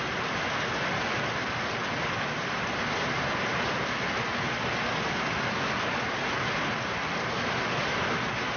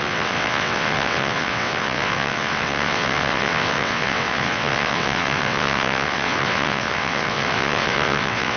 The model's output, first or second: second